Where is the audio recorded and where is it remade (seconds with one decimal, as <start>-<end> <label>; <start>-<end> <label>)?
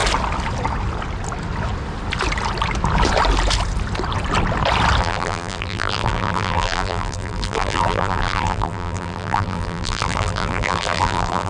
0.0-5.0 recorded; 5.0-11.5 remade